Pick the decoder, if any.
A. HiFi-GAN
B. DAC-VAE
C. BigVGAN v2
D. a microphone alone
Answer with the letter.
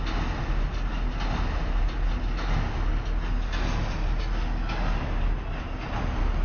D